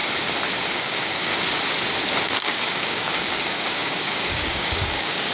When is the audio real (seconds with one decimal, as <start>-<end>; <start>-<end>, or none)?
0.0-0.7; 1.3-2.4